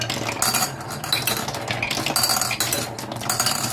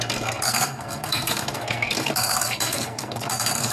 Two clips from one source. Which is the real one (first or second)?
first